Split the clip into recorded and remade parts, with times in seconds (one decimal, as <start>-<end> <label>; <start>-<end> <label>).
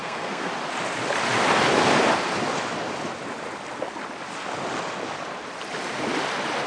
0.0-0.5 remade; 0.5-6.7 recorded